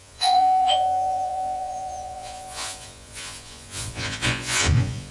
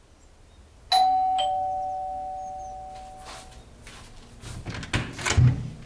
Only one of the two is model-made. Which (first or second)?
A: first